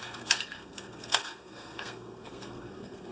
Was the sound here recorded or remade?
remade